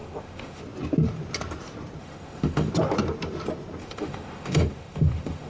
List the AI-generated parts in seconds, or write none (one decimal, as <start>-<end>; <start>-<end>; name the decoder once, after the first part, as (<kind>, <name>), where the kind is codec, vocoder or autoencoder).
0.0-0.6 (autoencoder, DAC-VAE); 2.0-2.7; 3.8-5.5